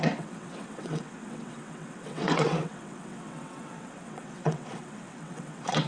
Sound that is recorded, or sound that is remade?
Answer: remade